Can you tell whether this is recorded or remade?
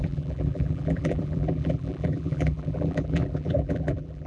remade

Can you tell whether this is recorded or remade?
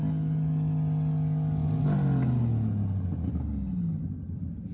recorded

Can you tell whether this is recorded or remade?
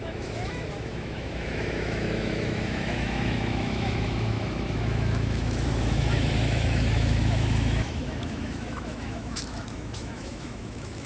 remade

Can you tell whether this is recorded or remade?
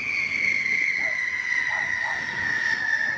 recorded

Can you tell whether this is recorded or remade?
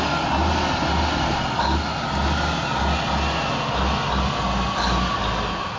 recorded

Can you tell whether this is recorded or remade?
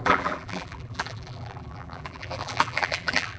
remade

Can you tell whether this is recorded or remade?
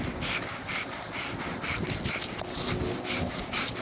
recorded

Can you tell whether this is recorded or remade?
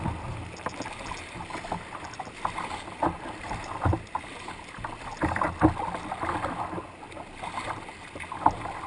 recorded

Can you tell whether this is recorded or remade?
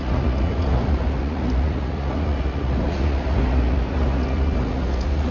remade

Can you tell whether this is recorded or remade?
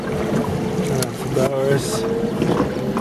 recorded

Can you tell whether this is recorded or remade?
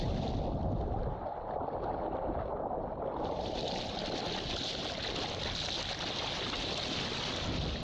recorded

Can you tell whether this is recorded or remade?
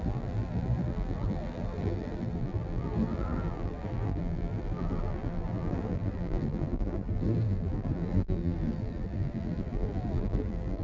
remade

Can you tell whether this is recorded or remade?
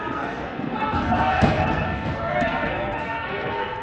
remade